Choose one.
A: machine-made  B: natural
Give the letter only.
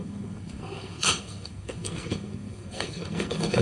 A